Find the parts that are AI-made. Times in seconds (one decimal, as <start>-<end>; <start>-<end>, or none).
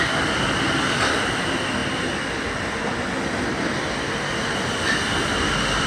none